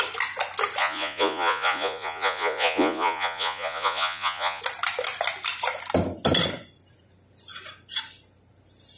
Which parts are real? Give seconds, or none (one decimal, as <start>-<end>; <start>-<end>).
0.0-0.8; 4.6-9.0